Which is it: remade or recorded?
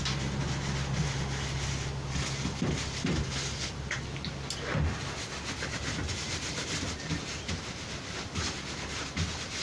recorded